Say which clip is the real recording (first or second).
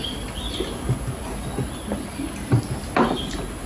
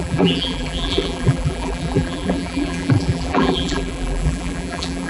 first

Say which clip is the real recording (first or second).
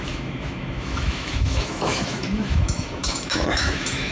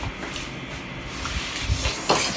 second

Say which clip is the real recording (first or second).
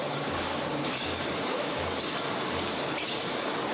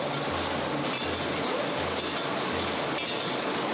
second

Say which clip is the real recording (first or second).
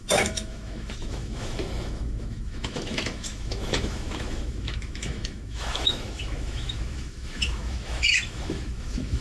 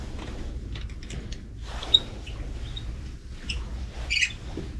second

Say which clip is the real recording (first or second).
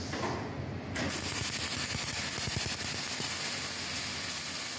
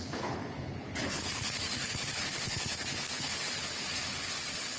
first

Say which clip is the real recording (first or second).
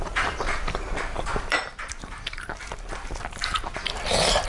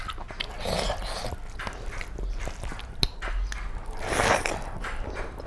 second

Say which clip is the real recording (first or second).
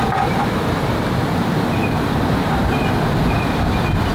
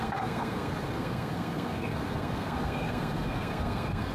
first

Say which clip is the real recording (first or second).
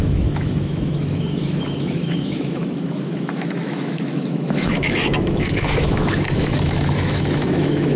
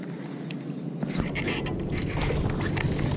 second